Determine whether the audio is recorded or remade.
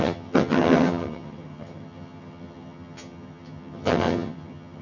remade